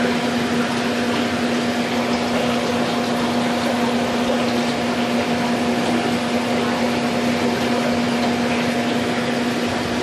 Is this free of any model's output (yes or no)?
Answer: yes